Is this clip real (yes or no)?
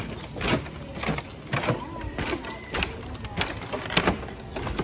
yes